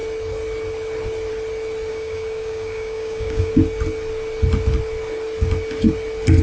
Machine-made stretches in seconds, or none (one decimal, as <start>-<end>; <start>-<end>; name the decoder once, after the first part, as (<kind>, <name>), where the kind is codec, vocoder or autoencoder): 1.9-3.5 (codec, DAC)